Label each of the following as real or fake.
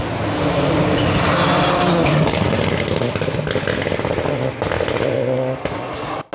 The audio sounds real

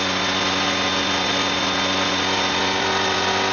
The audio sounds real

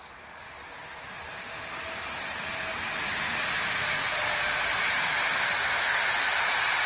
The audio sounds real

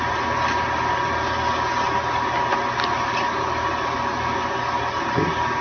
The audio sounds real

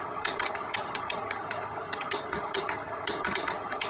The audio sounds fake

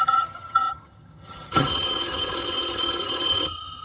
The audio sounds fake